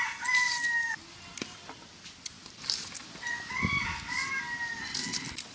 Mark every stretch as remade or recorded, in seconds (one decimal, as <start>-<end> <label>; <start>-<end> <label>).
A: 0.0-5.5 recorded